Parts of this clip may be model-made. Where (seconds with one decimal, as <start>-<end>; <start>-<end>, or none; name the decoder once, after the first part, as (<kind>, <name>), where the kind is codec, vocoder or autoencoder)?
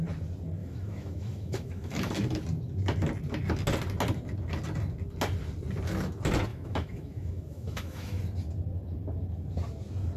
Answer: 0.6-2.1 (autoencoder, DAC-VAE); 6.5-8.2